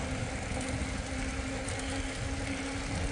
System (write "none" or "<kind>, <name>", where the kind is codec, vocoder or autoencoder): none